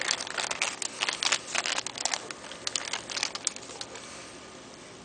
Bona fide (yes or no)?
yes